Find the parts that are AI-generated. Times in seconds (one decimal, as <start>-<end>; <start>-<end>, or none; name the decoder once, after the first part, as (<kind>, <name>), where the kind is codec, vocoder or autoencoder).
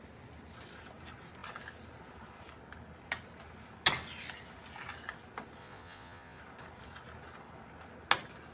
5.6-6.4 (vocoder, Vocos)